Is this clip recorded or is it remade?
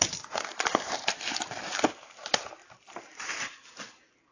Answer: remade